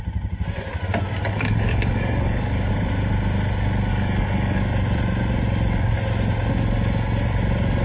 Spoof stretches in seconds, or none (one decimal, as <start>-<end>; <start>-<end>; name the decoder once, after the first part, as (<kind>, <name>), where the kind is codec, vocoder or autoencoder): 1.2-2.7 (codec, DAC); 3.9-4.6